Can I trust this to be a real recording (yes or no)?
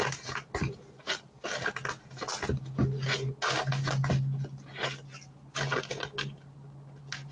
yes